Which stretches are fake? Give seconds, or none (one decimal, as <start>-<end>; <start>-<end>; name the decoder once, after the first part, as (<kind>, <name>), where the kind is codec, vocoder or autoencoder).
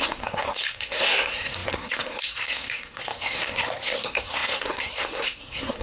0.0-5.8 (codec, SNAC)